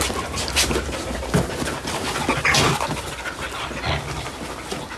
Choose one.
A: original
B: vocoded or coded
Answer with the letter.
A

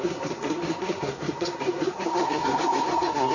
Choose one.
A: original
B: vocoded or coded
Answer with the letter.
B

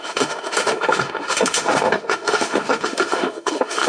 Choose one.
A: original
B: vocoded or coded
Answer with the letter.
B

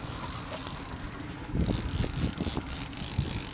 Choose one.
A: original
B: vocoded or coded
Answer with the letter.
A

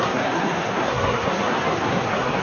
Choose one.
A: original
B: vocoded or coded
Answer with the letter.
B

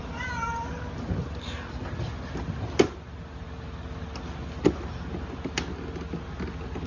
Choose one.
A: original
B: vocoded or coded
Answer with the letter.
A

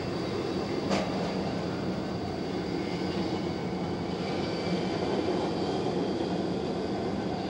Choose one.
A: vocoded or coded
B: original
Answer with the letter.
B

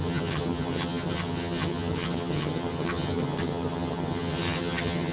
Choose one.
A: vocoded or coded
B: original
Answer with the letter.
A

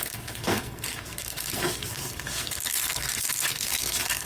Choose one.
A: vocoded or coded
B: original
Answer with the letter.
A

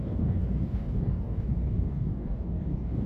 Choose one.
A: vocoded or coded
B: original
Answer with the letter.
A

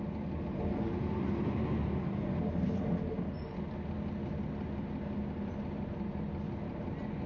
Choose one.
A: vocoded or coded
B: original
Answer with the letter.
B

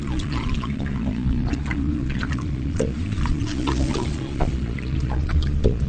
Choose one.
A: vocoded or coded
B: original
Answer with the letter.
A